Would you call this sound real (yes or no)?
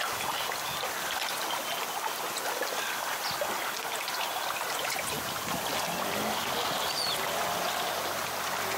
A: yes